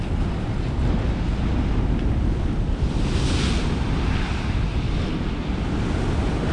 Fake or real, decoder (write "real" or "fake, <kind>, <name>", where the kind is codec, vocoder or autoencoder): real